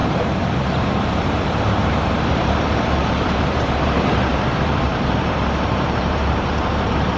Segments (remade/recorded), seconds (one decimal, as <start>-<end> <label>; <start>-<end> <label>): 0.0-3.7 remade; 3.7-4.3 recorded; 4.3-7.2 remade